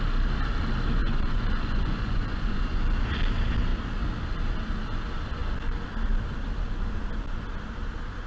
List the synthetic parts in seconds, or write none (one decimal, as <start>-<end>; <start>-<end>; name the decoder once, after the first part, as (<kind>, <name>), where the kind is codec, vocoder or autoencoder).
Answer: 1.0-2.8 (vocoder, Vocos)